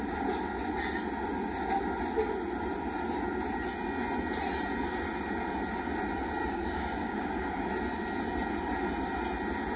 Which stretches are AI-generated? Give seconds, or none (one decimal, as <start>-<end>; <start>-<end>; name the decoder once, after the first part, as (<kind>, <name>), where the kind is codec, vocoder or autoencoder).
6.4-7.7 (codec, DAC)